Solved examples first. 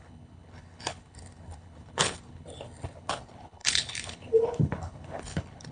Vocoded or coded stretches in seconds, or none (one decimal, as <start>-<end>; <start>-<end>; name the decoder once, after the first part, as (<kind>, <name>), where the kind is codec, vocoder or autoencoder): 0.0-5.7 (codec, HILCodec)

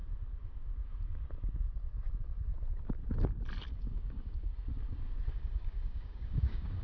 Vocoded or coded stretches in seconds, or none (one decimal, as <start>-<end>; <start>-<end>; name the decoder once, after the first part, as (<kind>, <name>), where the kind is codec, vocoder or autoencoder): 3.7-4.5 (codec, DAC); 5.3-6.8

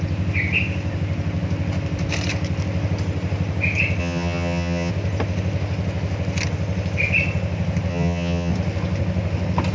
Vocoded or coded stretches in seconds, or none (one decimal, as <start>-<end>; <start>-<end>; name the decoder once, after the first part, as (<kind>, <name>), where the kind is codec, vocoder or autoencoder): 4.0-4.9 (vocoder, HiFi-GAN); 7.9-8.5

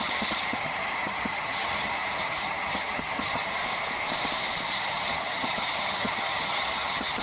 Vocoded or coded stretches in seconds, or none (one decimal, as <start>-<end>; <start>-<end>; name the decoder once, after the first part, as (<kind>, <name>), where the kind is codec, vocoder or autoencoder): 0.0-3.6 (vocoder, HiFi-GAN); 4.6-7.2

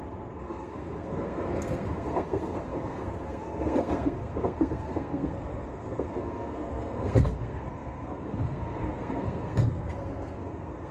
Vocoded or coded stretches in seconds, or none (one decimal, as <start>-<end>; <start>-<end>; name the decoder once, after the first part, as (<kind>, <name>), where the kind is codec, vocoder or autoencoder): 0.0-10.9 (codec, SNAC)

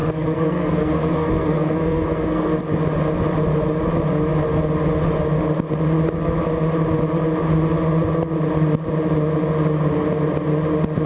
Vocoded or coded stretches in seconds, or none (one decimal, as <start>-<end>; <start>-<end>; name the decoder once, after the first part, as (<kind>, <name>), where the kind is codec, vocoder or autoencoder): 0.0-2.6 (codec, SNAC)

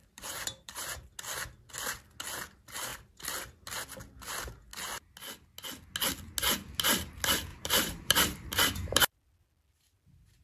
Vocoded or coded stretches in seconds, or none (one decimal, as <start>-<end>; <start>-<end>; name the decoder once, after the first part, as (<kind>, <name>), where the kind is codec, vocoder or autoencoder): 0.0-1.1 (vocoder, BigVGAN v2); 7.5-9.2

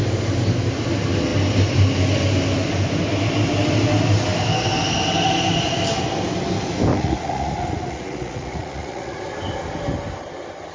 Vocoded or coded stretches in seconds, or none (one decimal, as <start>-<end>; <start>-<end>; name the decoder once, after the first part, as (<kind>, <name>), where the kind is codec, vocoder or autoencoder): 6.9-9.2 (vocoder, Vocos)